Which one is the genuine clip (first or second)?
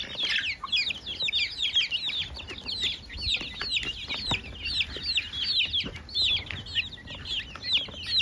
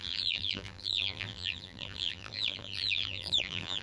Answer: first